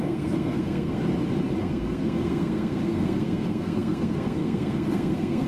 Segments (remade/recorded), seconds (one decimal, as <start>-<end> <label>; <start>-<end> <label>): 0.0-1.0 remade; 1.0-1.6 recorded; 1.6-5.5 remade